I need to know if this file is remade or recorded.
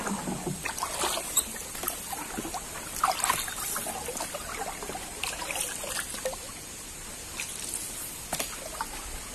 recorded